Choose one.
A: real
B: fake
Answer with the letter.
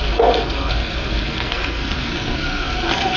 B